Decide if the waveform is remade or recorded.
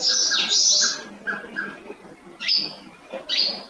recorded